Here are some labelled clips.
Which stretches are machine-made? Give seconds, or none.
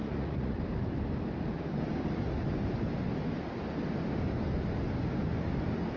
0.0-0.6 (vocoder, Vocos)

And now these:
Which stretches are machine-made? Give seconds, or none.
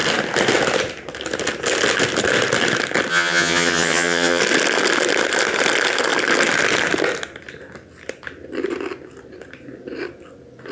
3.1-4.4 (vocoder, HiFi-GAN)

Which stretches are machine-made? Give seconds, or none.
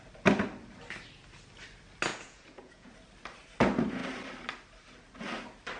2.1-2.9 (vocoder, Vocos)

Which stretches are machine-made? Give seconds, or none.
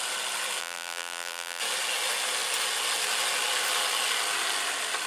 0.6-1.6 (vocoder, BigVGAN v2)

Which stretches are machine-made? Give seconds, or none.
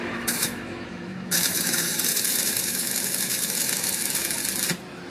0.0-4.4 (autoencoder, DAC-VAE)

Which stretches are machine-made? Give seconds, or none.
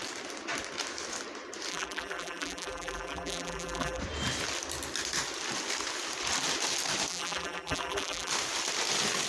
1.7-4.0 (vocoder, BigVGAN v2); 7.1-8.3